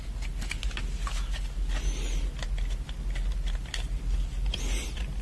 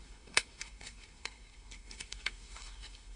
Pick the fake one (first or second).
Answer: second